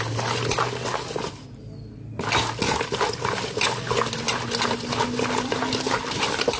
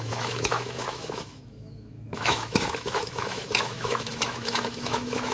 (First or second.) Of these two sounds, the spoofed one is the second